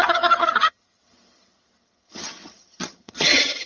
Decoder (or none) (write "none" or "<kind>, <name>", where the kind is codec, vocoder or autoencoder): vocoder, HiFi-GAN